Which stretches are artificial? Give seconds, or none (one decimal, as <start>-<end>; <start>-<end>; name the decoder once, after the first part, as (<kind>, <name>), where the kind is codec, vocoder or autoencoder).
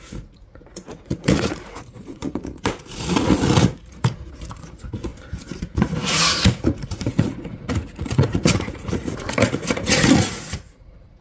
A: 0.0-5.1 (vocoder, Vocos); 5.6-11.2